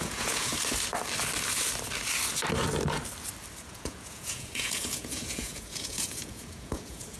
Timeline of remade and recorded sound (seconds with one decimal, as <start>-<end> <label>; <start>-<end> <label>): 0.0-0.5 remade; 0.5-3.7 recorded; 3.7-7.2 remade

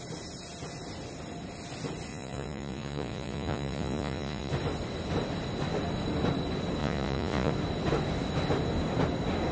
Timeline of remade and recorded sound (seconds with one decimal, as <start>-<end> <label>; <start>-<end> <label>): 0.0-2.1 recorded; 2.1-4.5 remade; 4.5-6.8 recorded; 6.8-7.5 remade; 7.5-9.5 recorded

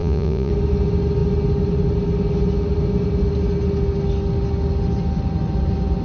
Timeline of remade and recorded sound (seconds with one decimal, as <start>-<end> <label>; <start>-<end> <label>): 0.0-0.5 remade; 0.5-6.0 recorded